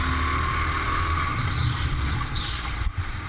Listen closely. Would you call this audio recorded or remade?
recorded